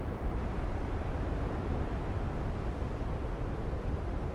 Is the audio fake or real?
fake